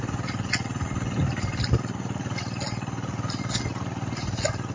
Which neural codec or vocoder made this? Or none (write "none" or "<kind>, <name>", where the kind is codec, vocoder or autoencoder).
none